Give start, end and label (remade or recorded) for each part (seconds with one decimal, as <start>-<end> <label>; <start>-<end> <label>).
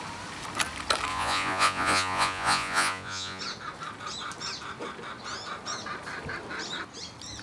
0.0-1.1 recorded; 1.1-3.4 remade; 3.4-7.4 recorded